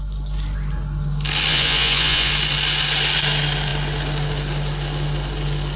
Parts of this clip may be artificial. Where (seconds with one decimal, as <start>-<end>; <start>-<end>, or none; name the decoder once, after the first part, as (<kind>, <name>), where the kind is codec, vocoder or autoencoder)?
1.5-2.3 (vocoder, Vocos)